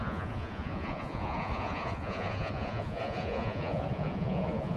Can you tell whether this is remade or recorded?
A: remade